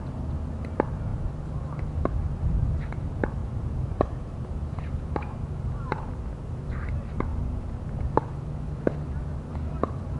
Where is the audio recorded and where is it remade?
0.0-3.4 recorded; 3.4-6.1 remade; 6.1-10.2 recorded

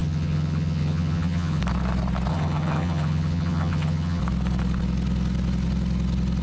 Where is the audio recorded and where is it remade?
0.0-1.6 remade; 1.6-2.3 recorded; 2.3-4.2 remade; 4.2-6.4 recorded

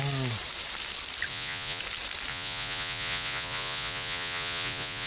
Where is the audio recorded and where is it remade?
0.0-1.3 recorded; 1.3-1.8 remade; 1.8-2.3 recorded; 2.3-5.1 remade

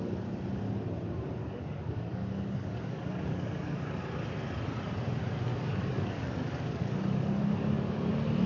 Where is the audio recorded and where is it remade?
0.0-1.4 recorded; 1.4-4.0 remade; 4.0-5.5 recorded; 5.5-8.1 remade; 8.1-8.5 recorded

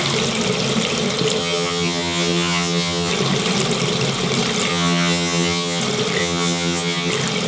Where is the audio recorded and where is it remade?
0.0-1.4 recorded; 1.4-3.1 remade; 3.1-4.7 recorded; 4.7-5.8 remade; 5.8-6.2 recorded; 6.2-7.1 remade; 7.1-7.5 recorded

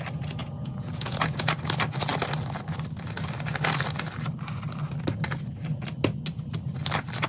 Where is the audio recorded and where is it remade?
0.0-0.4 recorded; 0.4-1.5 remade; 1.5-7.3 recorded

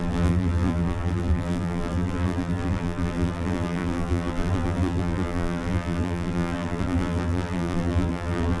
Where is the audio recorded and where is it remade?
0.0-8.6 remade